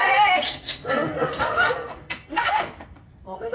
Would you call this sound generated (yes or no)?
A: yes